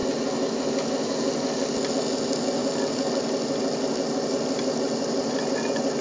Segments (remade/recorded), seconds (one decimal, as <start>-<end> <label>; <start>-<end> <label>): 0.0-6.0 recorded